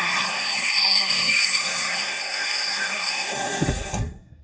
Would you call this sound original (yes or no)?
no